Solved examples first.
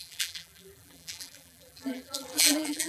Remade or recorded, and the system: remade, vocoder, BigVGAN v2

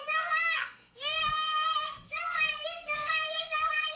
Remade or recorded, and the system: remade, codec, SNAC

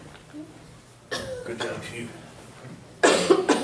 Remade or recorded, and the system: recorded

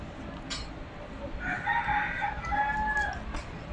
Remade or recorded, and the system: recorded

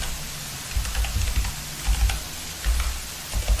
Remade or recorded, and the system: recorded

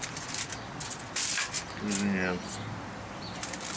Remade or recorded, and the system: recorded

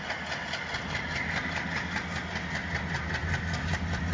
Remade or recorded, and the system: recorded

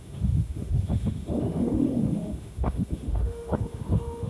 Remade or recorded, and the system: remade, autoencoder, DAC-VAE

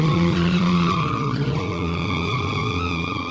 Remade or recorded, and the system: remade, vocoder, Vocos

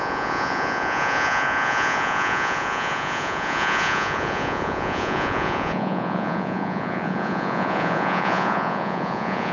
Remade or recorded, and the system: remade, vocoder, Vocos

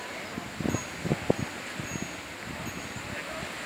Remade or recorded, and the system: recorded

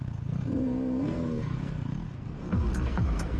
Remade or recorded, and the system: remade, codec, SNAC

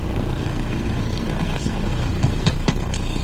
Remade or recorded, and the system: remade, codec, SNAC